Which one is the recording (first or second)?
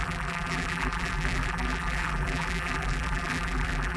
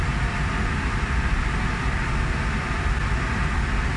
second